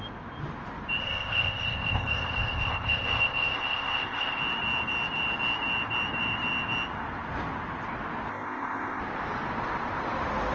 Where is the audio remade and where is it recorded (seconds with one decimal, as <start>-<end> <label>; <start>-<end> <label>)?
0.0-1.0 recorded; 1.0-4.4 remade; 4.4-8.3 recorded; 8.3-9.0 remade; 9.0-10.5 recorded